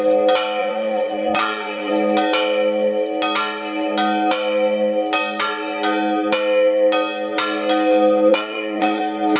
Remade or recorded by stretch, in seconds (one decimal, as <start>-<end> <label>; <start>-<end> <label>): 0.0-0.6 recorded; 0.6-1.9 remade; 1.9-8.3 recorded; 8.3-9.0 remade; 9.0-9.4 recorded